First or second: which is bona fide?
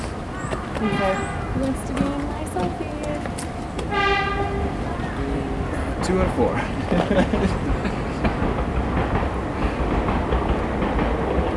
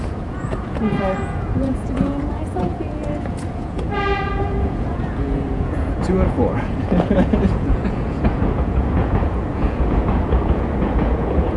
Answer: first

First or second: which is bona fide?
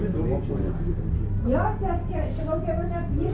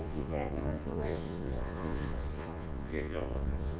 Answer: first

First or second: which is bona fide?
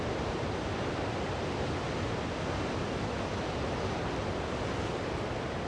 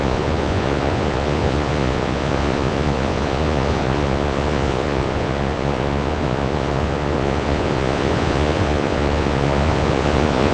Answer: first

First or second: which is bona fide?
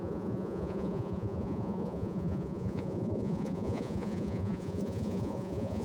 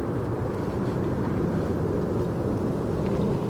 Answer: second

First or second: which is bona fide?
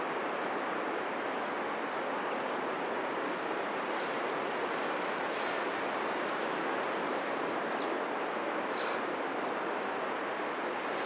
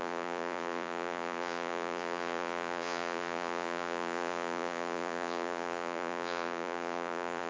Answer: first